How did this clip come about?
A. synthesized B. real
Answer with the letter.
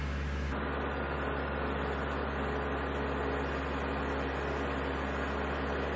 B